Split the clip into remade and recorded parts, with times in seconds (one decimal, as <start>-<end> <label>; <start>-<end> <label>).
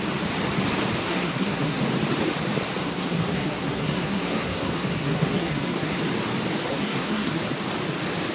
0.0-1.0 recorded; 1.0-1.8 remade; 1.8-2.8 recorded; 2.8-6.0 remade; 6.0-6.6 recorded; 6.6-7.4 remade; 7.4-8.3 recorded